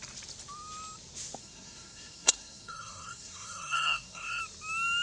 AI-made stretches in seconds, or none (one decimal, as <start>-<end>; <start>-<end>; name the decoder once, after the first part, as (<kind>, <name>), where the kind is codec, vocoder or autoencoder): 1.4-4.4 (codec, SNAC)